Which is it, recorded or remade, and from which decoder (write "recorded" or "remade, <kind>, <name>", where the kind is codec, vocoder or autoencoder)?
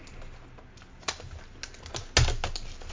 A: recorded